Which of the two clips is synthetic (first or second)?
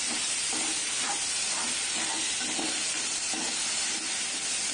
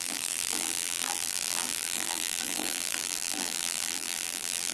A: second